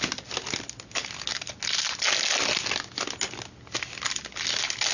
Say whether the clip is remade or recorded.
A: recorded